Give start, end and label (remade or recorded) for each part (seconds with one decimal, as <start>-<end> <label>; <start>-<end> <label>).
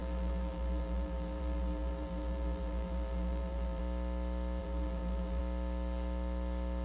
0.0-3.8 remade; 3.8-4.6 recorded; 4.6-5.4 remade; 5.4-6.8 recorded